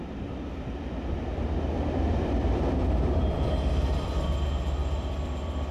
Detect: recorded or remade remade